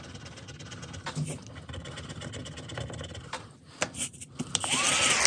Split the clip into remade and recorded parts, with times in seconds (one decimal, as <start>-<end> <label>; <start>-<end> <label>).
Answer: 0.0-5.3 recorded

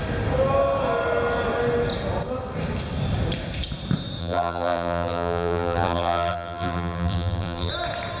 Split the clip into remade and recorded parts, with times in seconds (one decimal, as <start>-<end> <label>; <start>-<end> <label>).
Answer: 0.0-4.2 recorded; 4.2-7.7 remade; 7.7-8.2 recorded

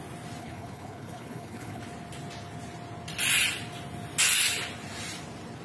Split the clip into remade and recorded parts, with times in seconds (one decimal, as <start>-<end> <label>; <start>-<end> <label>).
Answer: 0.0-0.4 recorded; 0.4-1.8 remade; 1.8-5.6 recorded

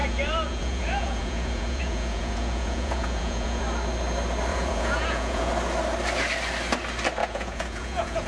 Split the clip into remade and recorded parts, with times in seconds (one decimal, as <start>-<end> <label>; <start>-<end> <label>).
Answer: 0.0-3.6 remade; 3.6-4.5 recorded; 4.5-5.5 remade; 5.5-7.2 recorded; 7.2-8.3 remade

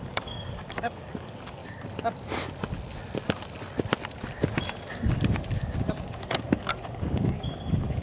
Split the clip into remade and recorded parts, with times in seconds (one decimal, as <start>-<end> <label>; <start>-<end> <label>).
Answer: 0.0-1.6 remade; 1.6-6.1 recorded; 6.1-8.0 remade

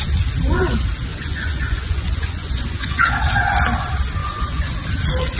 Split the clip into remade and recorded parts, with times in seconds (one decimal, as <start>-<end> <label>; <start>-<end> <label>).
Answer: 0.0-1.1 recorded; 1.1-3.1 remade; 3.1-4.2 recorded; 4.2-4.9 remade; 4.9-5.4 recorded

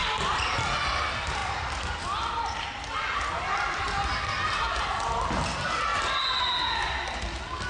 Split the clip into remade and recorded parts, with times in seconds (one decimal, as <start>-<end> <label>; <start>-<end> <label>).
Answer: 0.0-1.4 recorded; 1.4-2.0 remade; 2.0-5.9 recorded; 5.9-6.4 remade; 6.4-7.7 recorded

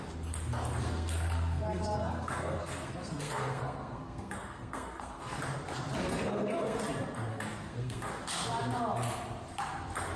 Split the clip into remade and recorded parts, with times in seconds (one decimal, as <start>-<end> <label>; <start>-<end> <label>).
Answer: 0.0-0.8 recorded; 0.8-5.4 remade; 5.4-6.0 recorded; 6.0-6.8 remade; 6.8-7.3 recorded; 7.3-8.1 remade; 8.1-10.2 recorded